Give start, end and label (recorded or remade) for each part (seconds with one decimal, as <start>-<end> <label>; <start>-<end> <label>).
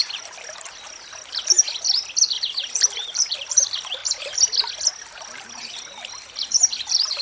0.0-4.0 remade; 4.0-4.9 recorded; 4.9-7.2 remade